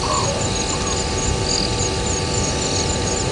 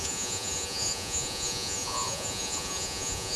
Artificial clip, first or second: second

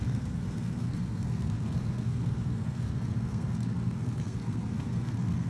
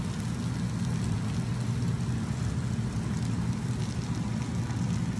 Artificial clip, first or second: first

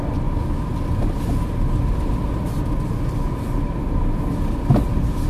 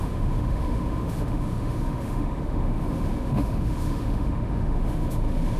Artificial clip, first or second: second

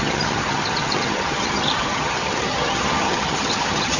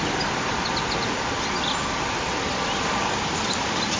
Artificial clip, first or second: first